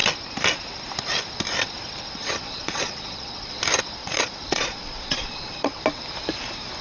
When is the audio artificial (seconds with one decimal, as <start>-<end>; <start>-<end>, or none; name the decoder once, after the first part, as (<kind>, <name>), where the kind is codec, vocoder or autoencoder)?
2.2-3.6 (vocoder, Vocos); 4.0-5.8